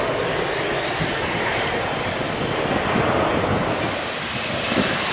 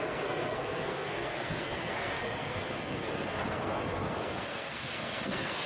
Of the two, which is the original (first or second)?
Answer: first